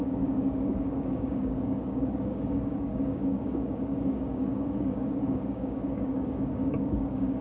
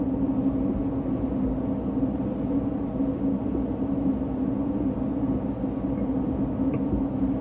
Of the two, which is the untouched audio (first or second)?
second